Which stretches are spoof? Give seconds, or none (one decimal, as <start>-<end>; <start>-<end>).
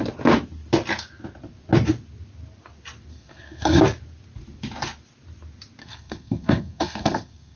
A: 3.1-3.8; 5.8-7.6